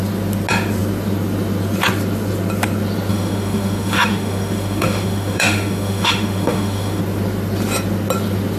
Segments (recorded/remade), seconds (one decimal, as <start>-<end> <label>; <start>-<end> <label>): 0.0-3.1 recorded; 3.1-7.0 remade; 7.0-8.6 recorded